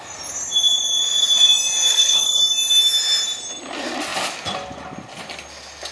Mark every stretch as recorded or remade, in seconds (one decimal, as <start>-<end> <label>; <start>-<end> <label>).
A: 0.0-1.9 recorded; 1.9-2.4 remade; 2.4-5.9 recorded